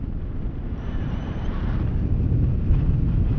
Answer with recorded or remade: recorded